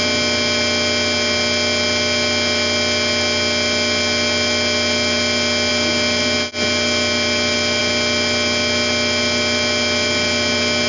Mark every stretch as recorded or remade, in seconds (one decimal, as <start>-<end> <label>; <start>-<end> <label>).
0.0-10.9 recorded

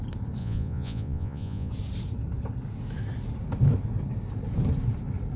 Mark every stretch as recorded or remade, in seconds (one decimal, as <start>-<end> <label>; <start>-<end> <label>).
0.0-0.4 recorded; 0.4-1.7 remade; 1.7-5.4 recorded

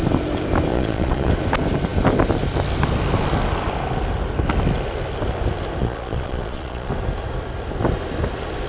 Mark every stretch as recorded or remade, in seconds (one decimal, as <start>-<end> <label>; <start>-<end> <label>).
0.0-0.7 recorded; 0.7-1.3 remade; 1.3-5.8 recorded; 5.8-6.9 remade; 6.9-8.7 recorded

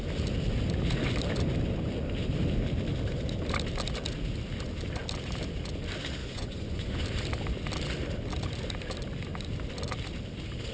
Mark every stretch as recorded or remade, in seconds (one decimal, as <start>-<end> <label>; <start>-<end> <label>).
0.0-6.2 recorded; 6.2-7.0 remade; 7.0-10.7 recorded

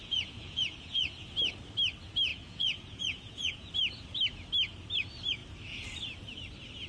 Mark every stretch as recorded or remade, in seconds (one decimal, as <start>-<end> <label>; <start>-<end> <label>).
0.0-1.3 remade; 1.3-2.3 recorded; 2.3-3.7 remade; 3.7-6.9 recorded

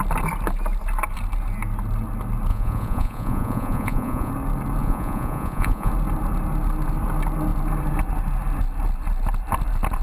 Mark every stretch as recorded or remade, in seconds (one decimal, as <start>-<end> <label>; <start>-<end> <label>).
0.0-2.5 recorded; 2.5-4.3 remade; 4.3-4.8 recorded; 4.8-5.9 remade; 5.9-10.0 recorded

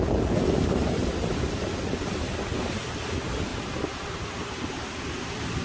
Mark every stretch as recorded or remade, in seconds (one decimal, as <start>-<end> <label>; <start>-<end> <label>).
0.0-5.6 recorded

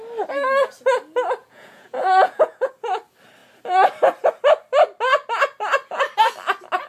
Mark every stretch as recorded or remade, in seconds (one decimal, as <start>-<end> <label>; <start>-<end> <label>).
0.0-1.4 recorded; 1.4-2.7 remade; 2.7-6.9 recorded